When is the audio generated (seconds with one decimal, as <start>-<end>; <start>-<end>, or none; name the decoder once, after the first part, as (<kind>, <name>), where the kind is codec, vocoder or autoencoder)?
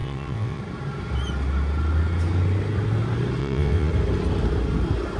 0.0-0.6 (vocoder, WaveNeXt); 3.4-3.9